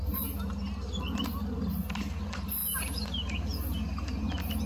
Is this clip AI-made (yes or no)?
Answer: no